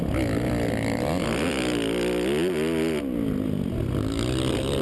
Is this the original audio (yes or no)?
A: yes